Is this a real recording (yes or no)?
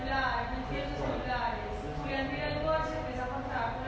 yes